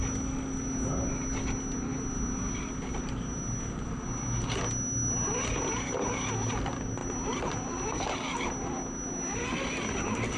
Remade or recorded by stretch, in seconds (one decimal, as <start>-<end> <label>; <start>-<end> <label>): 0.0-10.4 recorded